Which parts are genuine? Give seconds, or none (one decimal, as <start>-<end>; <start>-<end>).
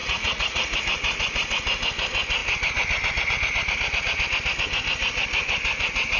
0.8-6.2